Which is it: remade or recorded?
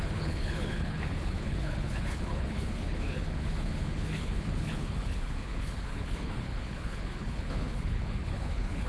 remade